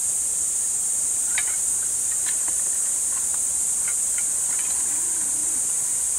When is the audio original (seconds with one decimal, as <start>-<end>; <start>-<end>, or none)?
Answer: 3.9-4.6